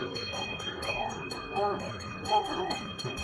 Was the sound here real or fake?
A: fake